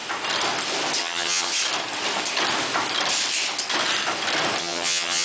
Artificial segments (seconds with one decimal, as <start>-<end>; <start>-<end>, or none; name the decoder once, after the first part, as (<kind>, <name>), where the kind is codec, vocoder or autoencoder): 1.0-1.5 (vocoder, HiFi-GAN); 4.6-5.2